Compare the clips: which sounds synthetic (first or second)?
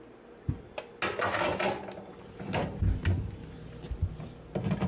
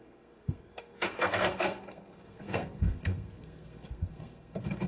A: second